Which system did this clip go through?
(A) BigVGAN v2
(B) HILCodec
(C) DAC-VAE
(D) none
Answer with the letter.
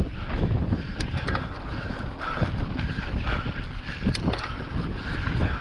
D